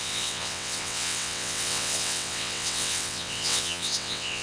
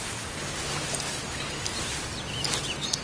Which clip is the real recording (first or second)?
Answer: second